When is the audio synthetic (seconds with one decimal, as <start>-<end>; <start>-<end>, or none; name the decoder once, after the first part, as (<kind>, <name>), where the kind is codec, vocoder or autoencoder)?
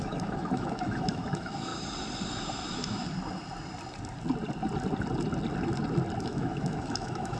0.0-1.7 (autoencoder, DAC-VAE); 2.3-3.0; 6.2-7.4